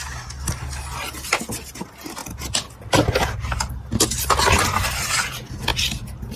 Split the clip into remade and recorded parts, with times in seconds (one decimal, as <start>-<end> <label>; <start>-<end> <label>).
0.0-6.4 recorded